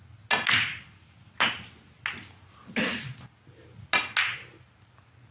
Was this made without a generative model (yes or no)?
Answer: yes